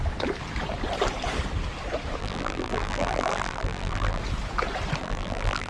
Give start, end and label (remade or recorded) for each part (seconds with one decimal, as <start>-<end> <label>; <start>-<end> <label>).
0.0-2.2 recorded; 2.2-4.2 remade; 4.2-5.0 recorded; 5.0-5.7 remade